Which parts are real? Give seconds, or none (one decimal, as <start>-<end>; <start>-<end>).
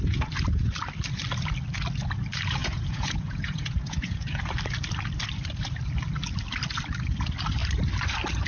0.0-2.6; 4.4-8.5